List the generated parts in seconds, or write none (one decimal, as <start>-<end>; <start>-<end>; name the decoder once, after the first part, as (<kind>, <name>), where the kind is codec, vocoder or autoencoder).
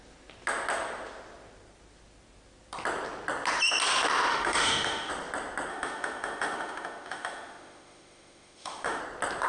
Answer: 4.3-5.1 (autoencoder, DAC-VAE); 5.7-9.0